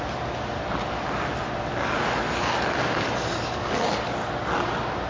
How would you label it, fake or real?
real